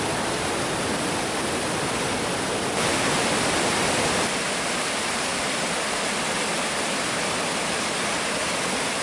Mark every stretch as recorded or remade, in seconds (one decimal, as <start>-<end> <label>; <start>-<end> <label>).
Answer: 0.0-9.0 recorded